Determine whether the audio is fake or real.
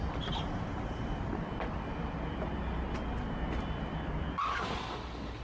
fake